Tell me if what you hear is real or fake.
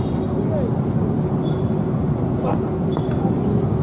real